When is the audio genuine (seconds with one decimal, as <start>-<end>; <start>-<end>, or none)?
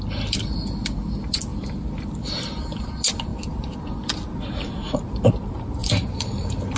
0.0-1.5; 2.9-5.8